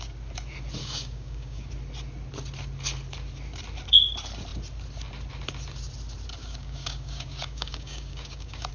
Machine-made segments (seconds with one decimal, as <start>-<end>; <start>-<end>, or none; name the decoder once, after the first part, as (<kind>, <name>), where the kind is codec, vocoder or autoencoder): 0.8-1.7 (codec, DAC); 6.4-8.7